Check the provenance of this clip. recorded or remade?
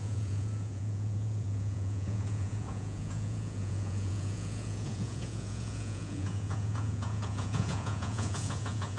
remade